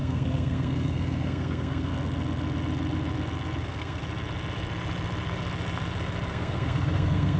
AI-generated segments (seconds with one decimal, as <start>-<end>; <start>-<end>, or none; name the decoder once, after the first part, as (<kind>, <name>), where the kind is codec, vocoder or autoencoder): 0.0-1.9 (codec, SNAC); 3.6-4.0; 6.3-7.4

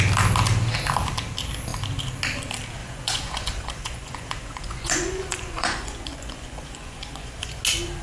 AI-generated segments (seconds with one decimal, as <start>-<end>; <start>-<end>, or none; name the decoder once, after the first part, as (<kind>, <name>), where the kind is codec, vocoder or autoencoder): 2.8-7.6 (vocoder, Vocos)

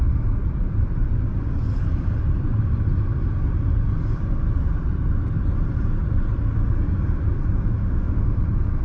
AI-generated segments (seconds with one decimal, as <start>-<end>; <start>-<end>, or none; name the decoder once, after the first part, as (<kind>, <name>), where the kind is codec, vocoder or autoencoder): 7.8-8.4 (autoencoder, DAC-VAE)

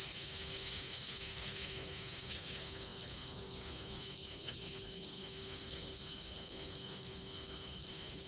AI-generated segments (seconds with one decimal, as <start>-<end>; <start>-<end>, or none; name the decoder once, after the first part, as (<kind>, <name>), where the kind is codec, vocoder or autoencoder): 0.0-8.3 (codec, SNAC)

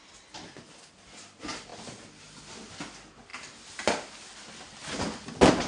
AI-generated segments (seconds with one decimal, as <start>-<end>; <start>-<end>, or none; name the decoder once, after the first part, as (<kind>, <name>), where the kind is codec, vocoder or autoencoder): none

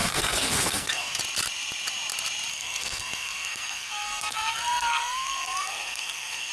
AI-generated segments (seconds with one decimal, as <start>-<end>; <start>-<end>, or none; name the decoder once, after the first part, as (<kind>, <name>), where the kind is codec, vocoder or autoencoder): 0.0-1.2 (codec, SNAC); 2.5-6.5

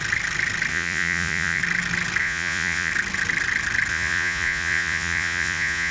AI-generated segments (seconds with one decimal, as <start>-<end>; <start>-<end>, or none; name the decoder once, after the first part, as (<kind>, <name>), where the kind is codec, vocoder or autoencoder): 0.7-1.6 (vocoder, Vocos); 2.2-2.9; 3.9-5.9

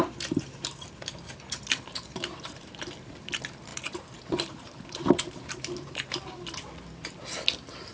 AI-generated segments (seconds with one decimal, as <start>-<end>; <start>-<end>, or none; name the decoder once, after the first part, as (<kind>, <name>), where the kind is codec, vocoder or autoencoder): 0.0-7.9 (vocoder, BigVGAN v2)